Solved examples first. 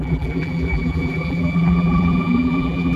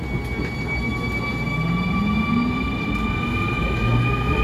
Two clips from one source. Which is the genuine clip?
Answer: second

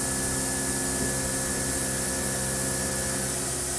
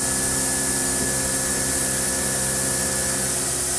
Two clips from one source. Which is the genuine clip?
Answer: first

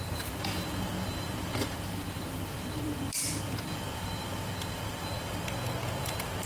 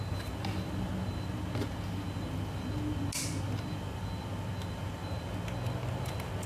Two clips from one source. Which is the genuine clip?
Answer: second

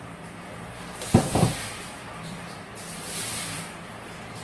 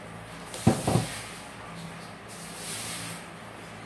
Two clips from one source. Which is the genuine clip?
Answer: second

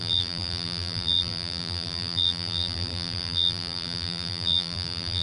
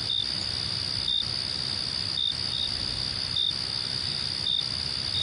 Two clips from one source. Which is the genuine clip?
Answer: second